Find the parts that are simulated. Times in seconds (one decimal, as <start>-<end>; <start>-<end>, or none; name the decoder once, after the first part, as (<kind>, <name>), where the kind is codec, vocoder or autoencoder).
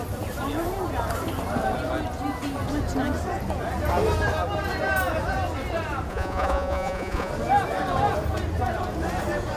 6.1-7.3 (vocoder, Vocos)